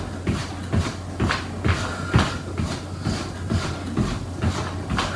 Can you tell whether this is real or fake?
real